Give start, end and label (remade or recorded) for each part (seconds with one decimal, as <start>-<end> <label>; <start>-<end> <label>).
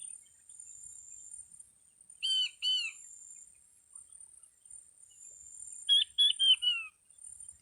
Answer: 0.0-7.6 recorded